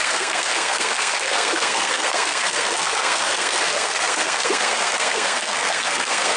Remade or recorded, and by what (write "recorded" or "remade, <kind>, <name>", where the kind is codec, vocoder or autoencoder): remade, codec, SNAC